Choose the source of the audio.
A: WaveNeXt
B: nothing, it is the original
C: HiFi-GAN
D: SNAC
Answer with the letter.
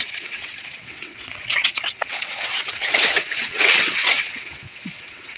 A